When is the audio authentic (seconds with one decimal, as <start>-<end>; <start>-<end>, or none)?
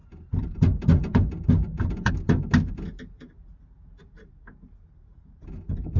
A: 2.1-6.0